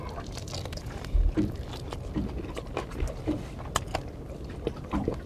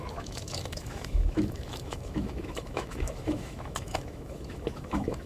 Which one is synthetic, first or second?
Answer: second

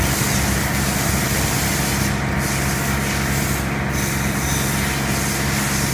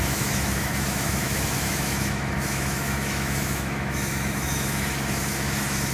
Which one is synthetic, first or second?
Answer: second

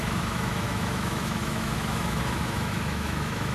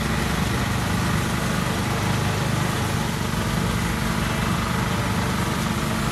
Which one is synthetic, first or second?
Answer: first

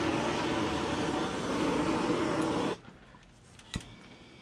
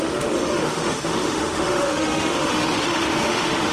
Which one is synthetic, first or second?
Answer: second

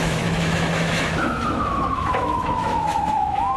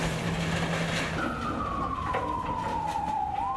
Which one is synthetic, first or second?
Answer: first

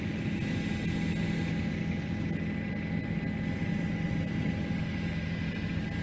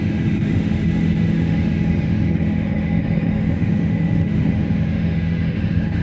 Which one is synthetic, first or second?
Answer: second